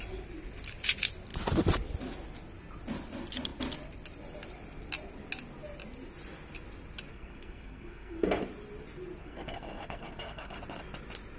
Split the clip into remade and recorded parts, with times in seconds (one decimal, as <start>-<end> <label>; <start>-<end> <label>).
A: 0.0-7.1 recorded; 7.1-8.4 remade; 8.4-9.2 recorded; 9.2-10.6 remade; 10.6-11.4 recorded